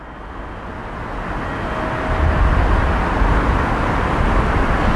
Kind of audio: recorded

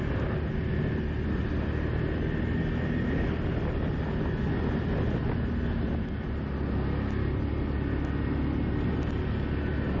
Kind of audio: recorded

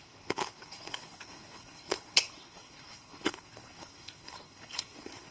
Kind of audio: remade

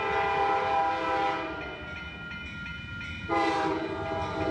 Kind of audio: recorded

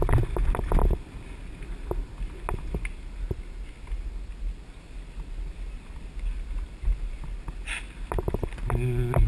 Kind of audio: recorded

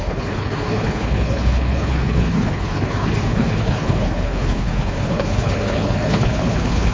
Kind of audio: remade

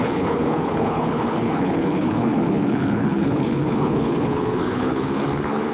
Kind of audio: remade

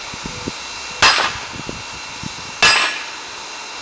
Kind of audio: recorded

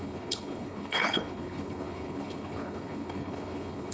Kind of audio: remade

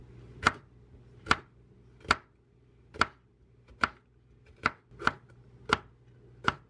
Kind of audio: recorded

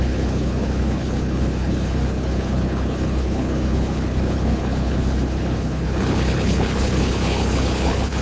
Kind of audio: remade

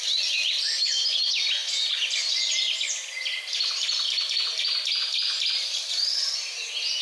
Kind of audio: recorded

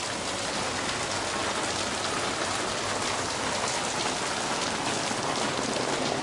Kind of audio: recorded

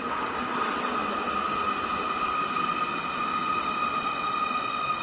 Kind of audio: recorded